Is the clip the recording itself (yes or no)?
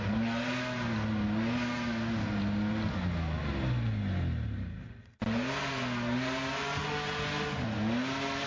yes